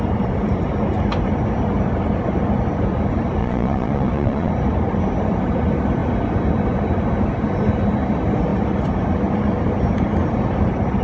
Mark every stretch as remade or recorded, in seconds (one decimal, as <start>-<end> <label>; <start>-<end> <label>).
0.0-3.4 recorded; 3.4-4.5 remade; 4.5-11.0 recorded